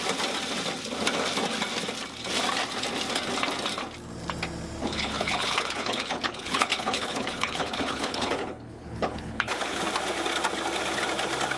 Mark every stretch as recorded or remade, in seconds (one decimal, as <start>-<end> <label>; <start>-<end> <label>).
0.0-4.8 recorded; 4.8-9.8 remade; 9.8-11.6 recorded